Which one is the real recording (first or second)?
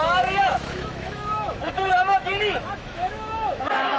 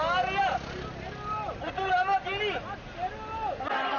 second